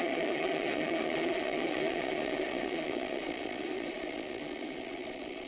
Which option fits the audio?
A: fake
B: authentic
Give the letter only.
A